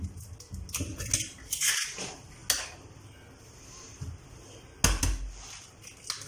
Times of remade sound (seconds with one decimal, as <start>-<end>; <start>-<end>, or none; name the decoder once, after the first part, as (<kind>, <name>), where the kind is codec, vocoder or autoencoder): none